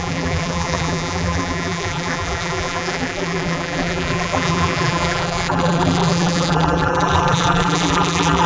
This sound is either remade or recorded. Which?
remade